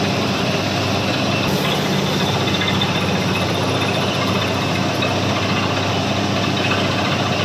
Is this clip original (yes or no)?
yes